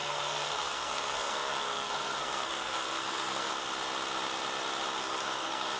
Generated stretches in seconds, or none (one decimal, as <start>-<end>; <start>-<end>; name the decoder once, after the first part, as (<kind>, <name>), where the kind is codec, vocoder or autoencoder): 0.0-3.5 (codec, SNAC); 5.0-5.8